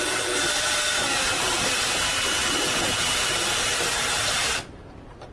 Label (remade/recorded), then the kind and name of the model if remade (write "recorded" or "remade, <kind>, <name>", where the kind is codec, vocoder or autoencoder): remade, vocoder, BigVGAN v2